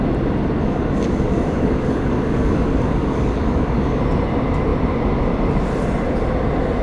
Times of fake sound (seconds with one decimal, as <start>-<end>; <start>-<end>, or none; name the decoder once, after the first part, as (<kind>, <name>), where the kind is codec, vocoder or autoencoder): 0.6-4.0 (codec, DAC)